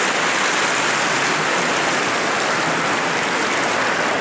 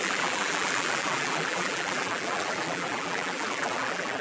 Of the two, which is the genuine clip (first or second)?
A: first